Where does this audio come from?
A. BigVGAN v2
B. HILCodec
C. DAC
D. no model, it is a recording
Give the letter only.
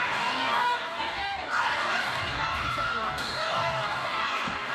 C